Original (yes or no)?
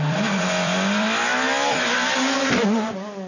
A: no